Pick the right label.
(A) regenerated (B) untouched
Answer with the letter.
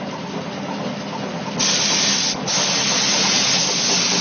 B